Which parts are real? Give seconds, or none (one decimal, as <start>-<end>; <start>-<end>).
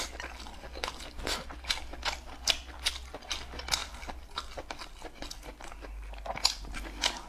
0.0-7.3